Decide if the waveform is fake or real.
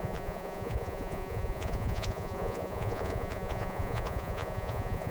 fake